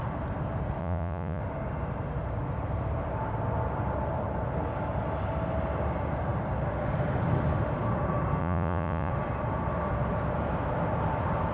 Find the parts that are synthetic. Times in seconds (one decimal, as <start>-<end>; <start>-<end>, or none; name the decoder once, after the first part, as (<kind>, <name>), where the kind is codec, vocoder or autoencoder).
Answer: 0.8-1.4 (vocoder, Vocos); 8.4-9.1